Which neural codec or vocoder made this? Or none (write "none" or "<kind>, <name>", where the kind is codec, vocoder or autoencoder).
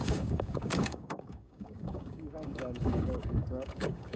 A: codec, DAC